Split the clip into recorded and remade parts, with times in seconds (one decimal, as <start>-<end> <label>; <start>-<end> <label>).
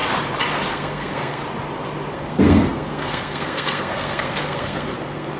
0.0-0.7 recorded; 0.7-1.4 remade; 1.4-2.1 recorded; 2.1-5.4 remade